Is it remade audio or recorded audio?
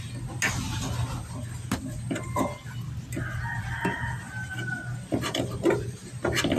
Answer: recorded